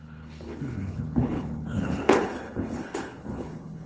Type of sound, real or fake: fake